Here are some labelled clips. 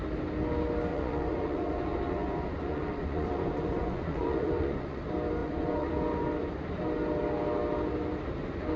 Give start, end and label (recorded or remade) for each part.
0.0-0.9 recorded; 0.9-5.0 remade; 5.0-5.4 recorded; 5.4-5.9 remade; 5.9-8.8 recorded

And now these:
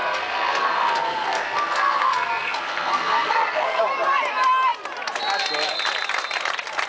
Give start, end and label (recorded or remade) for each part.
0.0-3.8 remade; 3.8-6.9 recorded

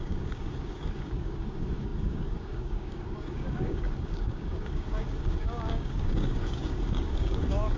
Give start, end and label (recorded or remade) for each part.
0.0-7.8 remade